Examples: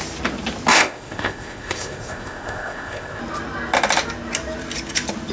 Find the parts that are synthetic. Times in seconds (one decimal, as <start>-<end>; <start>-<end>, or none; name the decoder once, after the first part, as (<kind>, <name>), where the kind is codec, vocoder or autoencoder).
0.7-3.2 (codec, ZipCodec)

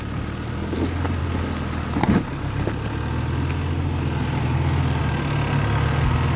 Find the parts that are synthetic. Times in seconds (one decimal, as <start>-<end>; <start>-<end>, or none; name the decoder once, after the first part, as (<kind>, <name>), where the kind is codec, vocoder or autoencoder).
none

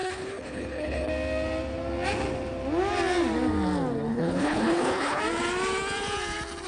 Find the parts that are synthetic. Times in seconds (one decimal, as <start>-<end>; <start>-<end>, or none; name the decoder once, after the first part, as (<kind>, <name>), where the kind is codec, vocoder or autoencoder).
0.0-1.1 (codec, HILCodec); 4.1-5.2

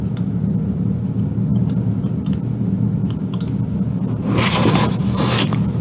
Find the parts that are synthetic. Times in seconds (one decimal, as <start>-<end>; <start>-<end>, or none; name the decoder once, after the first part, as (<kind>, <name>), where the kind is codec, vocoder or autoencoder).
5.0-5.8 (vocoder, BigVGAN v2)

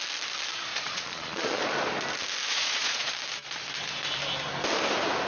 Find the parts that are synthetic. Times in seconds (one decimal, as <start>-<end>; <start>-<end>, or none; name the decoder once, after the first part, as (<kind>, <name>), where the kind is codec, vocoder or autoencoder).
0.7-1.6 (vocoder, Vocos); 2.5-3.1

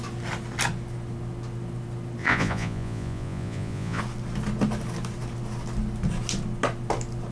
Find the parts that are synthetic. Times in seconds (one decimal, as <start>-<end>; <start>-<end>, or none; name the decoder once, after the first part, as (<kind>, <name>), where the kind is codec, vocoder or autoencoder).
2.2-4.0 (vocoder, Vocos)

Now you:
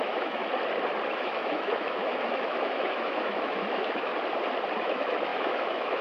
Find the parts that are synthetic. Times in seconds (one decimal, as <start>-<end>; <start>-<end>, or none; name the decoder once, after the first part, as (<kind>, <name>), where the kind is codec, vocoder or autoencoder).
0.0-0.4 (autoencoder, DAC-VAE); 1.1-4.1; 4.8-6.0

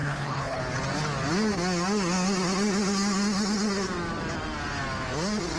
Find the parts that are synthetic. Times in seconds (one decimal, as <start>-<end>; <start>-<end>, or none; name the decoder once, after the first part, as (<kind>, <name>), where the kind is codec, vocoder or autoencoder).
0.0-0.6 (codec, HILCodec)